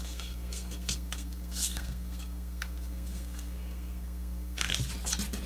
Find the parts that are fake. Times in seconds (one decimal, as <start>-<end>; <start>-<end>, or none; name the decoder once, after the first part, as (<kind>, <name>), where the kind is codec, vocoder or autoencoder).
0.0-4.7 (codec, SNAC)